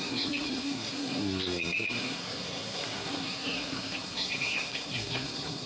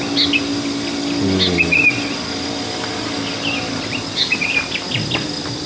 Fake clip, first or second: first